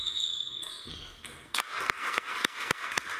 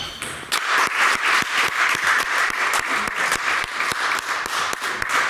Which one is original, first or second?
second